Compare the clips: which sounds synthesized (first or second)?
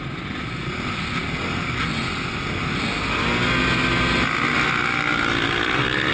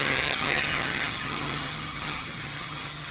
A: second